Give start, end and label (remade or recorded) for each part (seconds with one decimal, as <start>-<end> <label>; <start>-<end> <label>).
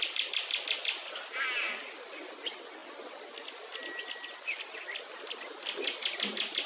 0.0-6.7 recorded